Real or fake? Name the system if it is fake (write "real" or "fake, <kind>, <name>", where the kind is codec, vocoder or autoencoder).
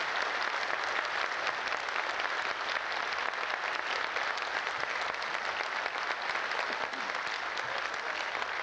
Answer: real